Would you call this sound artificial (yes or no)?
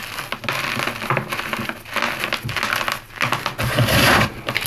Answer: no